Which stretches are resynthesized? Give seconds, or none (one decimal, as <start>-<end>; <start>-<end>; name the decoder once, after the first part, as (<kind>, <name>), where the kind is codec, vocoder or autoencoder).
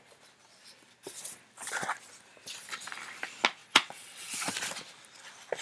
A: 3.6-4.3 (vocoder, WaveNeXt)